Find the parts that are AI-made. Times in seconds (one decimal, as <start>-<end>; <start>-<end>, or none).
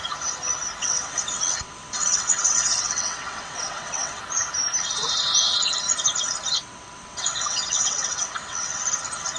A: 0.8-4.2; 6.6-8.8